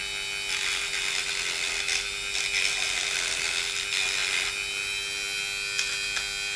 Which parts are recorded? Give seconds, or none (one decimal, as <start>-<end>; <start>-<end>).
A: 0.0-6.6